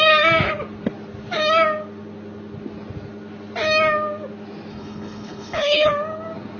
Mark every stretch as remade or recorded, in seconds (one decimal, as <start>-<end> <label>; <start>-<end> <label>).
0.0-4.7 recorded; 4.7-5.9 remade; 5.9-6.6 recorded